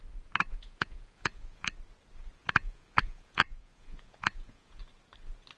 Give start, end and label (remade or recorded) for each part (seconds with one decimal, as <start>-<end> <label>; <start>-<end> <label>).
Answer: 0.0-0.5 recorded; 0.5-1.7 remade; 1.7-2.4 recorded; 2.4-4.8 remade; 4.8-5.6 recorded